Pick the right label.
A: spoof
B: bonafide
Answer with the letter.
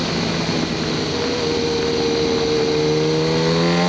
B